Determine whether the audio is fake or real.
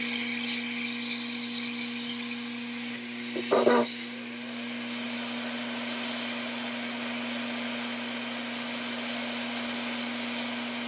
real